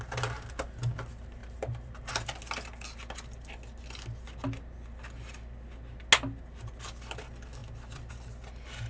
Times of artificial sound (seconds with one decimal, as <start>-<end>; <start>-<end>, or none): 1.4-2.1